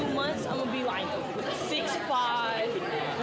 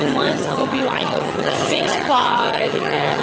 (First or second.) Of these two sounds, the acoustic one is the first